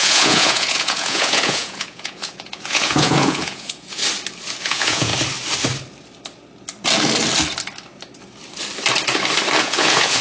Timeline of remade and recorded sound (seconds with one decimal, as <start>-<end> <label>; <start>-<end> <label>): 0.0-4.0 remade; 4.0-4.6 recorded; 4.6-5.1 remade; 5.1-9.6 recorded; 9.6-10.2 remade